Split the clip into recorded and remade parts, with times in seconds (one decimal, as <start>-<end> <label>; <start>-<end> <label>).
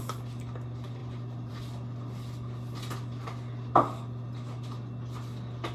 0.0-5.7 recorded